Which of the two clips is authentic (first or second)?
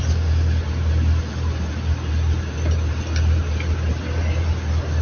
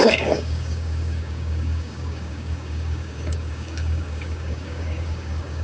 first